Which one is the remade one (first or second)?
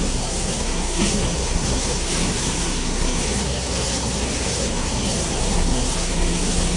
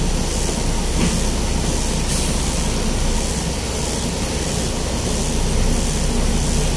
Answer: first